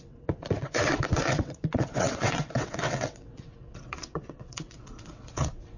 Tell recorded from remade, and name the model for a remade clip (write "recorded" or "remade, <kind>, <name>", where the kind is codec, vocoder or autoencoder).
remade, vocoder, WaveNeXt